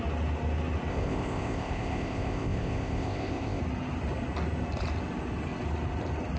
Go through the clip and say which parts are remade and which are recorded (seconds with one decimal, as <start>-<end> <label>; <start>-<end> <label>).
0.0-0.9 recorded; 0.9-3.6 remade; 3.6-6.4 recorded